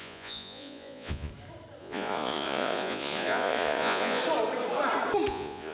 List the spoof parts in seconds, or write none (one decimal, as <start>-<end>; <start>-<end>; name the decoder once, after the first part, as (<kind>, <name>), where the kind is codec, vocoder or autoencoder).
0.0-1.3 (vocoder, Vocos); 1.8-4.2; 5.3-5.7